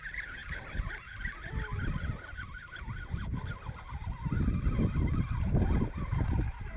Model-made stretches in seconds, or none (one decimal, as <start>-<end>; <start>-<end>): none